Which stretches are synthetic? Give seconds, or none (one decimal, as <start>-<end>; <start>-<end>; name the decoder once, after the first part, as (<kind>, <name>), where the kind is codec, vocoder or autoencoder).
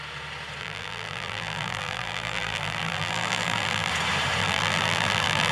0.6-3.9 (vocoder, BigVGAN v2); 4.4-5.5